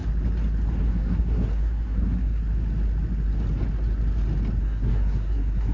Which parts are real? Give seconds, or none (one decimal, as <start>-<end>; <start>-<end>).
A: 0.0-0.8; 2.4-4.6